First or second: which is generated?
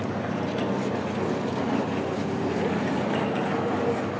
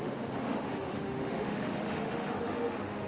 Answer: second